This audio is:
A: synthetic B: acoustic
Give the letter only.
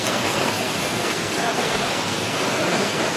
A